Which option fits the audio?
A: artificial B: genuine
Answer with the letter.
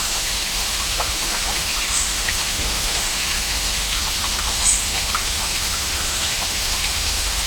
A